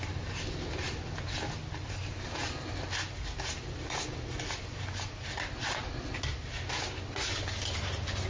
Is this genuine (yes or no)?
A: yes